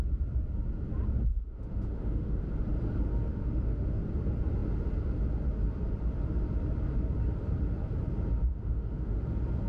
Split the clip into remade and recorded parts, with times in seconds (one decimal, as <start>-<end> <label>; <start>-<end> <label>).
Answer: 0.0-1.3 recorded; 1.3-2.4 remade; 2.4-3.3 recorded; 3.3-4.0 remade; 4.0-8.5 recorded; 8.5-9.2 remade; 9.2-9.7 recorded